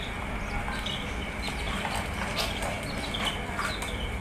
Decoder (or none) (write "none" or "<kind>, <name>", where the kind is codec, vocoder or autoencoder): none